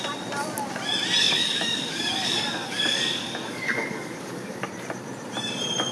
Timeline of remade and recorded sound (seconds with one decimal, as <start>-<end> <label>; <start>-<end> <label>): 0.0-1.2 recorded; 1.2-4.7 remade; 4.7-5.9 recorded